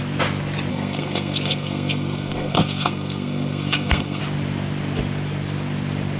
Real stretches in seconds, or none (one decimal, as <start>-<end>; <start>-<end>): 0.0-0.7; 4.2-6.2